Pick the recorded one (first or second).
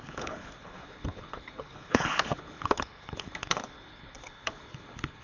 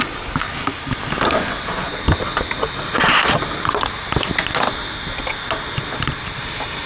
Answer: second